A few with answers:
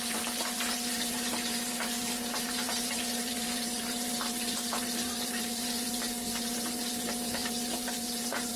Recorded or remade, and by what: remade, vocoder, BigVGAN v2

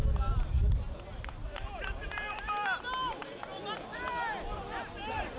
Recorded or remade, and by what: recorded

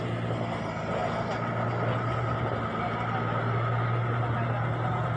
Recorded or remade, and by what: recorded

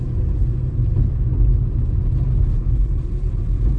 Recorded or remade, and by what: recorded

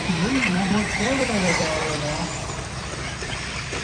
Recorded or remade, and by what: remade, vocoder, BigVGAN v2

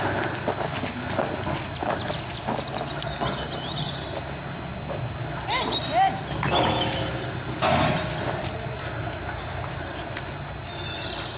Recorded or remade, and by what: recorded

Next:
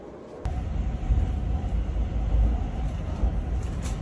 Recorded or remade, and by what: recorded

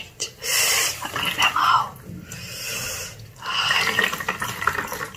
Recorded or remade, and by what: recorded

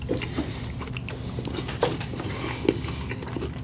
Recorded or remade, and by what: recorded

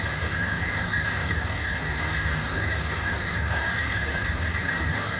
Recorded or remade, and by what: remade, codec, DAC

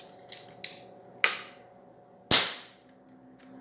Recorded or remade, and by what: recorded